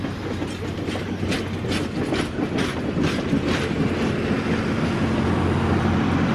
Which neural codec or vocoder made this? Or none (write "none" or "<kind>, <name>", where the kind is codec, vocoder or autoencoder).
none